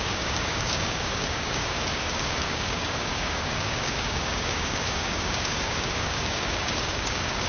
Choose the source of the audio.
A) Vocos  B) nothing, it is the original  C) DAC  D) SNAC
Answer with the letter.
C